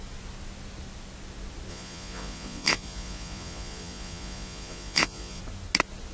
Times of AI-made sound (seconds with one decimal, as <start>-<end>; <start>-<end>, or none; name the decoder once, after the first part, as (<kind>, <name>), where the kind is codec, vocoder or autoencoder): 1.7-5.4 (vocoder, Vocos)